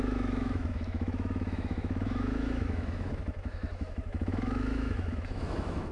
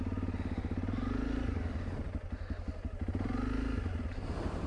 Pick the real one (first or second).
second